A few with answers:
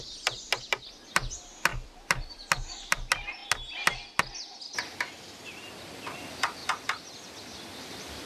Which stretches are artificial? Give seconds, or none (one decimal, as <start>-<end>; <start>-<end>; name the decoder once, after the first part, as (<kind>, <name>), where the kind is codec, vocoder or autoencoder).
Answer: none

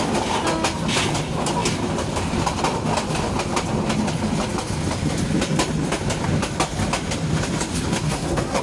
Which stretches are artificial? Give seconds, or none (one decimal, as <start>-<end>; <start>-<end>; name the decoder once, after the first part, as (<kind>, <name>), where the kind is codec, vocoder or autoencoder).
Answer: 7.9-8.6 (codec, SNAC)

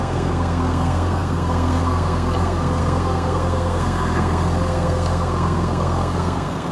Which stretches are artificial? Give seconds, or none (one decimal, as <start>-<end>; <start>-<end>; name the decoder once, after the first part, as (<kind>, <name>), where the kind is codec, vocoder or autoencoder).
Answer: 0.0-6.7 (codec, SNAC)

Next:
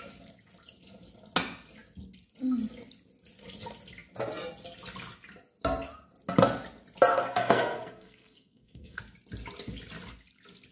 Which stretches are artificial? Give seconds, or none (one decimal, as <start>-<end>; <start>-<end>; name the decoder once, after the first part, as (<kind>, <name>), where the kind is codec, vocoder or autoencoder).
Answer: 7.1-9.0 (codec, SNAC)

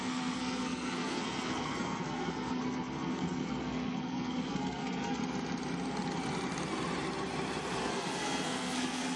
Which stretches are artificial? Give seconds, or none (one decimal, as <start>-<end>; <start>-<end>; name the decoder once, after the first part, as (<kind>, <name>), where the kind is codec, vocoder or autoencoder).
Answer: 0.0-5.2 (codec, SNAC); 7.8-9.2